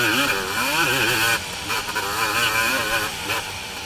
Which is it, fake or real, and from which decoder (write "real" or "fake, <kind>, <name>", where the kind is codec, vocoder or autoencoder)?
real